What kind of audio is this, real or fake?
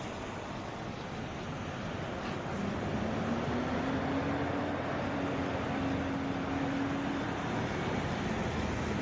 real